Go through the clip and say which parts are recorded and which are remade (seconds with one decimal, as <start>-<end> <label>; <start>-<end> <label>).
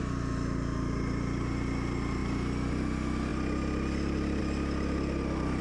0.0-5.6 recorded